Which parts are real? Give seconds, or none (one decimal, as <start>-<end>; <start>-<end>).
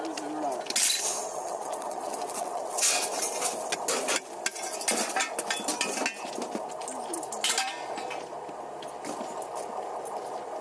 0.0-1.2; 3.0-10.6